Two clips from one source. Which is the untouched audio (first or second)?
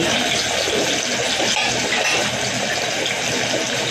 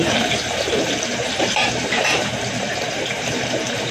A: first